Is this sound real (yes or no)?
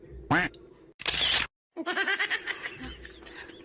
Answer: yes